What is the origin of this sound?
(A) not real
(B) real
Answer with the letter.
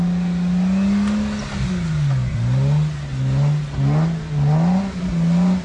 B